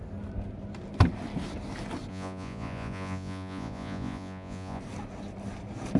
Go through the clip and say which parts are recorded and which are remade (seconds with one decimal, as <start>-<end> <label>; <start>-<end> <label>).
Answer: 0.0-2.1 recorded; 2.1-4.8 remade; 4.8-6.0 recorded